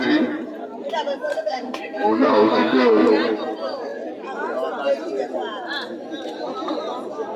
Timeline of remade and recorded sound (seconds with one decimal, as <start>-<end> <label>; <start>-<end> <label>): 0.0-1.3 recorded; 1.3-3.1 remade; 3.1-7.4 recorded

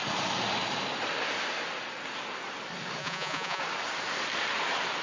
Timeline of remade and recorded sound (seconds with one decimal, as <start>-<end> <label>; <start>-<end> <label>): 0.0-3.0 recorded; 3.0-3.6 remade; 3.6-5.0 recorded